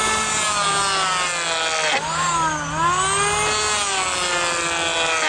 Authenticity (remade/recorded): recorded